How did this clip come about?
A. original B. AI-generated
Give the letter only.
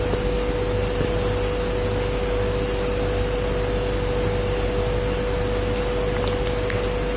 A